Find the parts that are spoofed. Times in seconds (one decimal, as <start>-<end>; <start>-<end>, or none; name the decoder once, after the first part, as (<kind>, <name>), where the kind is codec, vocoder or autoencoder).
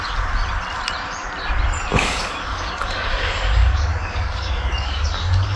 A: 1.9-5.6 (codec, DAC)